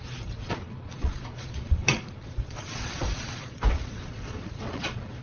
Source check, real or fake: fake